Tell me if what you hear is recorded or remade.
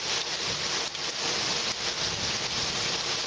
recorded